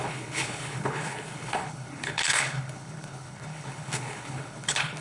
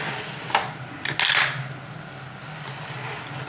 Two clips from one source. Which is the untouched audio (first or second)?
second